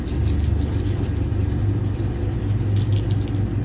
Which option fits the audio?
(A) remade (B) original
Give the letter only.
B